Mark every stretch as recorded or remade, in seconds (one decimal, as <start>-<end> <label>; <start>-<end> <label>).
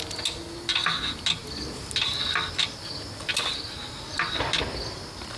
0.0-5.4 recorded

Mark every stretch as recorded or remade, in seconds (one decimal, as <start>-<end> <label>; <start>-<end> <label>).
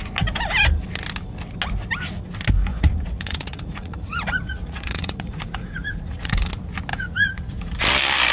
0.0-2.7 recorded; 2.7-6.5 remade; 6.5-6.9 recorded; 6.9-7.8 remade; 7.8-8.3 recorded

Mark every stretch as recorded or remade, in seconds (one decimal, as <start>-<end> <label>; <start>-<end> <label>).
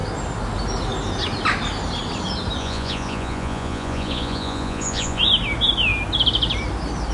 0.0-2.6 recorded; 2.6-5.2 remade; 5.2-7.1 recorded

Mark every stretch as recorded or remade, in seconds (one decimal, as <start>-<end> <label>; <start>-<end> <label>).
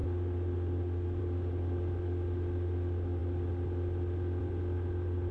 0.0-5.3 recorded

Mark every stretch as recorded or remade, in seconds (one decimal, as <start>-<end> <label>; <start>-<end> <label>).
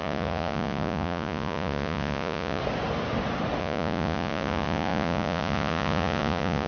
0.0-2.6 remade; 2.6-3.6 recorded; 3.6-6.7 remade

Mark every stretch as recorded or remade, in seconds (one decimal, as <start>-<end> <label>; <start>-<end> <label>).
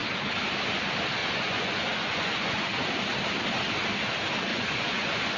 0.0-1.2 recorded; 1.2-2.7 remade; 2.7-4.5 recorded; 4.5-5.4 remade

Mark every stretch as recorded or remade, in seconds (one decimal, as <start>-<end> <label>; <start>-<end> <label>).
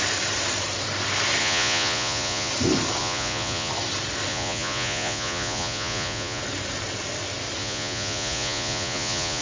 0.0-1.4 recorded; 1.4-2.5 remade; 2.5-3.0 recorded; 3.0-3.7 remade; 3.7-4.3 recorded; 4.3-6.4 remade; 6.4-7.6 recorded; 7.6-9.4 remade